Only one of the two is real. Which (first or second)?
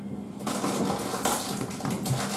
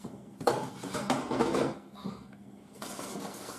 first